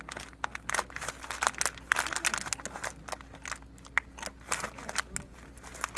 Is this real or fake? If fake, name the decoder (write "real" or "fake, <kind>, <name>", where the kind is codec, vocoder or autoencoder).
real